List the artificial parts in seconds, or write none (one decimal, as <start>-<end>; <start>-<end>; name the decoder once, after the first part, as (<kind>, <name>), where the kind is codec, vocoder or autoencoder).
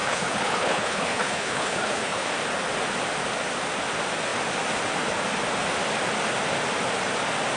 0.0-2.3 (codec, HILCodec)